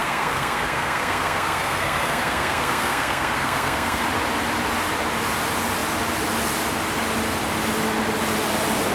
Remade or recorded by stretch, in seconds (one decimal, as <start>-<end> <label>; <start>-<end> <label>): 0.0-4.0 remade; 4.0-8.9 recorded